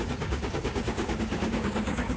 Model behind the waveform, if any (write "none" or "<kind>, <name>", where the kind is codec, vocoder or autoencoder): codec, DAC